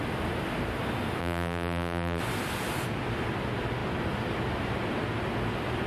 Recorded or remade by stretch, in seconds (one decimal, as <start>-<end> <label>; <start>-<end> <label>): 0.0-1.2 recorded; 1.2-2.2 remade; 2.2-5.9 recorded